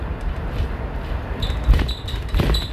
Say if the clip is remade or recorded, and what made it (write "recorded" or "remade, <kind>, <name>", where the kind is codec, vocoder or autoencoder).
remade, vocoder, BigVGAN v2